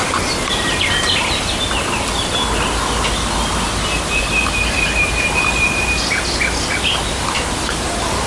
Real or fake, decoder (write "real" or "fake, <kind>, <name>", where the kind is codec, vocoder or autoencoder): real